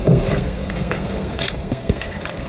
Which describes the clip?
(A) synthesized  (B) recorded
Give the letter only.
A